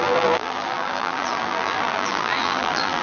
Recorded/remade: remade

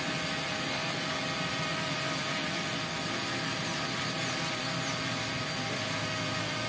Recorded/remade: recorded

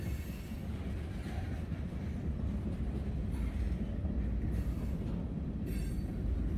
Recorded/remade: recorded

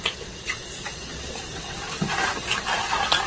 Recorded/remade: recorded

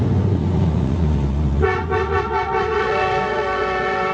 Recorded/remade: remade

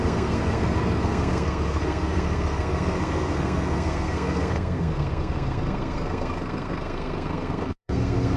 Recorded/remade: remade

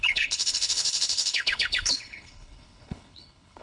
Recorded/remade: remade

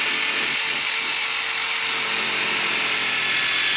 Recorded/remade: recorded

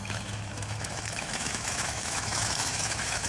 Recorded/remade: remade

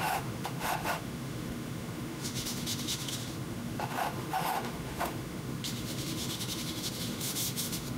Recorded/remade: remade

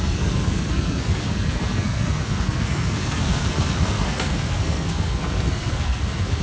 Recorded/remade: remade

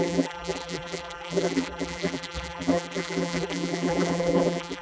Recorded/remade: remade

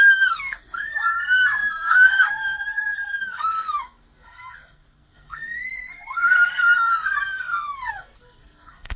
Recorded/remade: remade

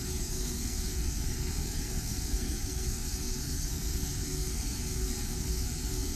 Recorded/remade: remade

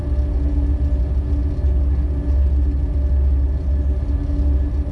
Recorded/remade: recorded